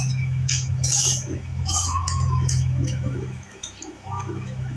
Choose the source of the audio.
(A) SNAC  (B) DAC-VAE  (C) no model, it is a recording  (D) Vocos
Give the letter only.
B